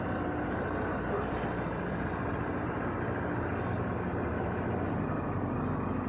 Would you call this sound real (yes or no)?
yes